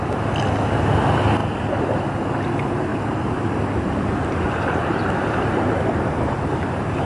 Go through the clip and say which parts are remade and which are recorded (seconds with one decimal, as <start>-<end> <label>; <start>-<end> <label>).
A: 0.0-2.9 recorded; 2.9-7.1 remade